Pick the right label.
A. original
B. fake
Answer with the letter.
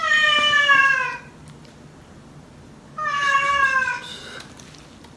A